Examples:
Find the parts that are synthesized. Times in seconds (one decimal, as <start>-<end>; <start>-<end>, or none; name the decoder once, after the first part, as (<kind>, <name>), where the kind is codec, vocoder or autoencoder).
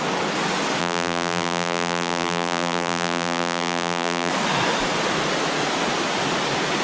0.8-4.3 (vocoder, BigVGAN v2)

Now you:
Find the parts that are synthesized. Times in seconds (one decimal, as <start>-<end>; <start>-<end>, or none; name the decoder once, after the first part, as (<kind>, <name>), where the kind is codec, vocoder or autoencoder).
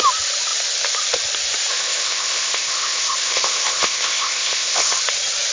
1.7-5.0 (codec, ZipCodec)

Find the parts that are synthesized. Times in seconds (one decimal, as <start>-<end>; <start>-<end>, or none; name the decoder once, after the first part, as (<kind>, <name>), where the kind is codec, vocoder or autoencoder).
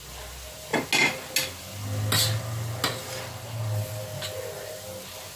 none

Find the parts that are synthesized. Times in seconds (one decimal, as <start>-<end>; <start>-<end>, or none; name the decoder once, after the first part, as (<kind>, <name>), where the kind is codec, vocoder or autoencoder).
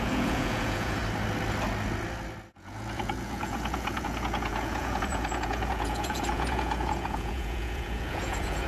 0.0-1.0 (vocoder, Vocos); 2.5-8.7